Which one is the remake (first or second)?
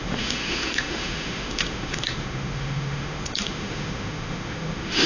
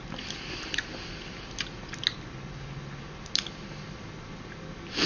first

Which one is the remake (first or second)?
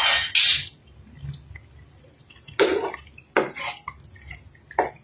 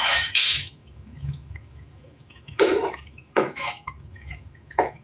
second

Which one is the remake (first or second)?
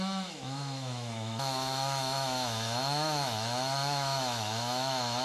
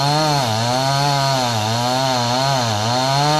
first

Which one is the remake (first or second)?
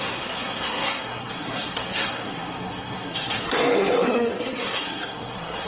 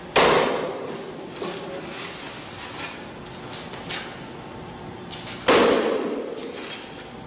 first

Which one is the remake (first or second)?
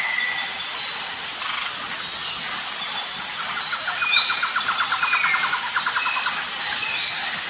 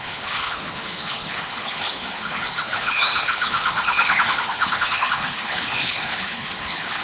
second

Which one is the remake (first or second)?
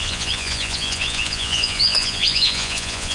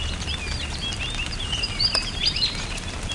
first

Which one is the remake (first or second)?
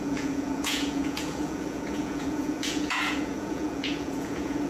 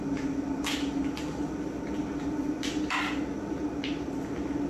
first